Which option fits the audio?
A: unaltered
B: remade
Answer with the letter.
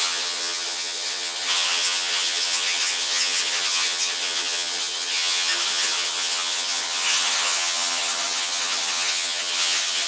B